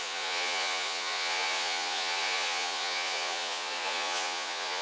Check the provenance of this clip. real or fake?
fake